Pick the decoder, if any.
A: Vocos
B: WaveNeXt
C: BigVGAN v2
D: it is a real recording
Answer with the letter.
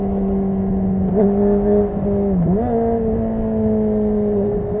D